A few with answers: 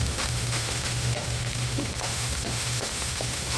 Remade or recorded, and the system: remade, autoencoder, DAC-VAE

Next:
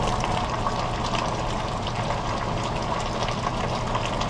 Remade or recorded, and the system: recorded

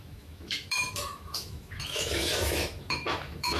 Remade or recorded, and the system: remade, autoencoder, DAC-VAE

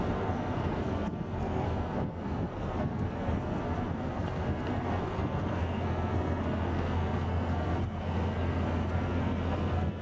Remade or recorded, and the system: remade, codec, SNAC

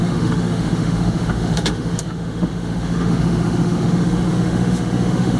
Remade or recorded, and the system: remade, autoencoder, DAC-VAE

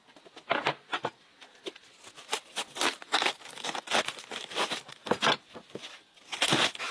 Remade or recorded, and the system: recorded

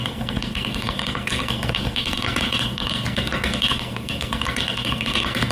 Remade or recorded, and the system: remade, codec, SNAC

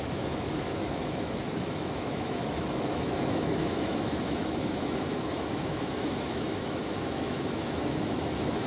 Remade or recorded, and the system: remade, autoencoder, DAC-VAE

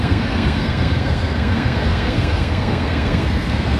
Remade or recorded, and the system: remade, codec, SNAC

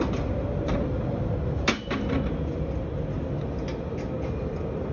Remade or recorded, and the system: recorded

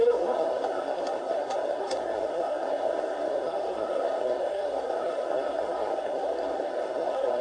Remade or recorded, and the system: remade, codec, SNAC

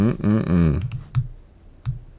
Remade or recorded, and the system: recorded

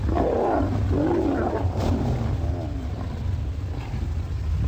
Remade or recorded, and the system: recorded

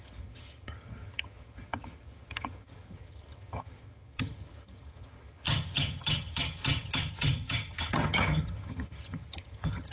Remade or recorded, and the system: remade, vocoder, HiFi-GAN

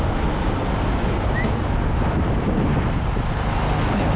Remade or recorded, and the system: recorded